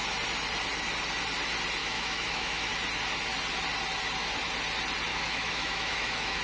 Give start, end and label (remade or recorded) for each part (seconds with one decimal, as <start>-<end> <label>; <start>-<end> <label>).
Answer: 0.0-1.8 recorded; 1.8-2.7 remade; 2.7-5.1 recorded; 5.1-6.4 remade